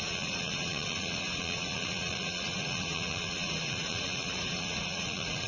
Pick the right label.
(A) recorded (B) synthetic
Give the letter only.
B